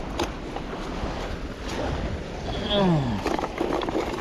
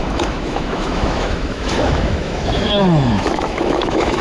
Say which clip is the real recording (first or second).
first